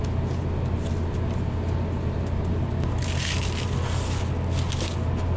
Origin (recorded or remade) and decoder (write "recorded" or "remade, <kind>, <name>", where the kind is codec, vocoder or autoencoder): recorded